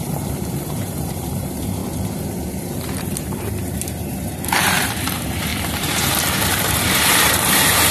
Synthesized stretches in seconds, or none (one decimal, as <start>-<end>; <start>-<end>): 0.0-1.8; 2.6-7.9